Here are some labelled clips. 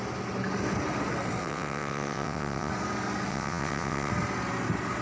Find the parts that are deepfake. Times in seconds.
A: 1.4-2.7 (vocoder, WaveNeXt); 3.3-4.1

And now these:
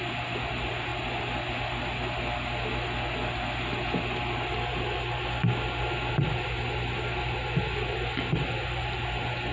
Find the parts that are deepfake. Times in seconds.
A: none

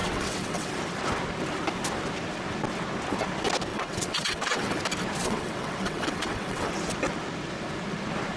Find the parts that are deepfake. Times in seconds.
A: 0.0-0.7 (vocoder, WaveNeXt); 3.7-4.8; 5.2-6.7

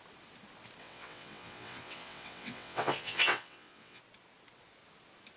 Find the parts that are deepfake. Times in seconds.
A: 0.8-4.0 (vocoder, WaveNeXt)